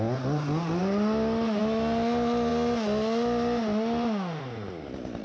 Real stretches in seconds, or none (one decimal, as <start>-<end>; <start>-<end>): 0.0-5.2